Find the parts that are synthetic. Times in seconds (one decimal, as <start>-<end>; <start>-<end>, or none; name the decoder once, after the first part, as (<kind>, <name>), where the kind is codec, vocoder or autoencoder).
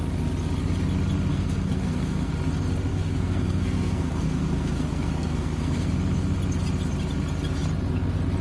1.3-2.3 (codec, SNAC); 2.9-5.9